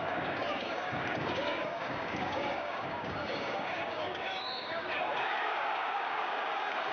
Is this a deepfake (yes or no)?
yes